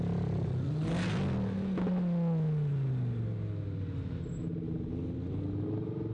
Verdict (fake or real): real